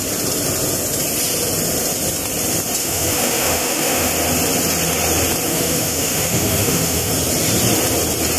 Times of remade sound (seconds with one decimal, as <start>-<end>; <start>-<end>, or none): 2.8-4.1; 5.5-7.1